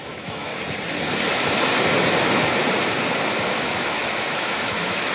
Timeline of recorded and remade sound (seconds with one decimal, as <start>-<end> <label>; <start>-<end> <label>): 0.0-0.5 remade; 0.5-3.6 recorded; 3.6-5.1 remade